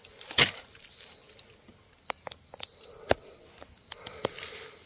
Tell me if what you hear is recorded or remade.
recorded